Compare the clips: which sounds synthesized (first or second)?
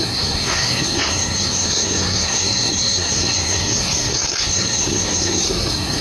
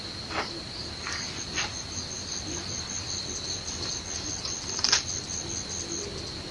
first